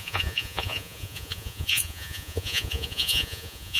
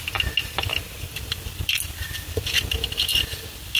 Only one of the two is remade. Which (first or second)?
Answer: first